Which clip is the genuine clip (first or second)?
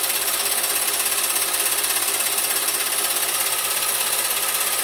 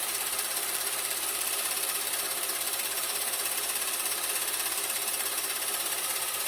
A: first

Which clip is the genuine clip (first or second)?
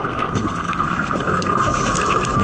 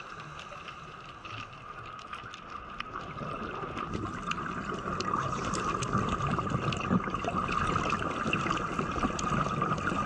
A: second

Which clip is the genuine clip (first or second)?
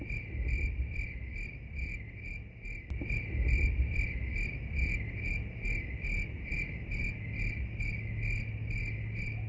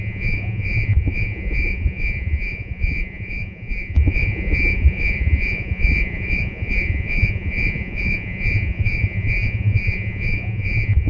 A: first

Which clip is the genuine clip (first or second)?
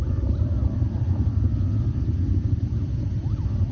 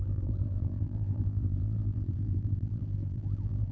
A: first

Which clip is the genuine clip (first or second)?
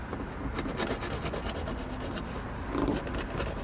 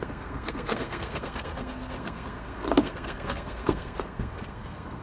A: first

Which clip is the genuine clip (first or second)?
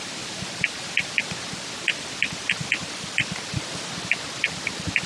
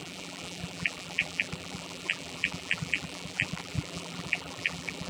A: first